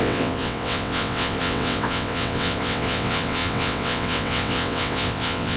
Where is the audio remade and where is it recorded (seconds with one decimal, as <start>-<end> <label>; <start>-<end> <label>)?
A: 0.0-5.6 remade